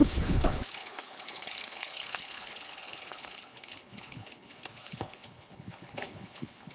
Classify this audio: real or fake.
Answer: fake